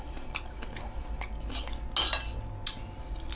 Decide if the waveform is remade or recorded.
recorded